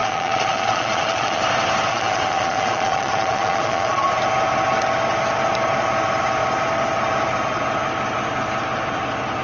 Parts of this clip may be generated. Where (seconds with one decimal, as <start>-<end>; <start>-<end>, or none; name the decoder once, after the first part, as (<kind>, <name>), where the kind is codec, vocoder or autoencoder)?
0.0-1.4 (vocoder, Vocos); 1.9-4.1